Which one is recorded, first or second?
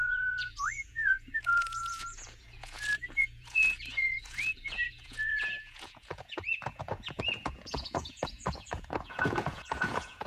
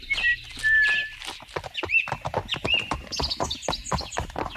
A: second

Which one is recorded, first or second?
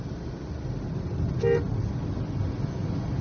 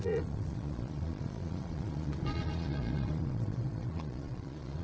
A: first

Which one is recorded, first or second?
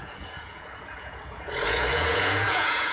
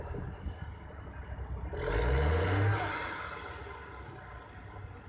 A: second